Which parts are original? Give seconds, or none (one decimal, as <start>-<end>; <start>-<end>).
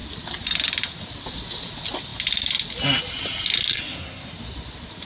0.0-3.7; 4.3-5.1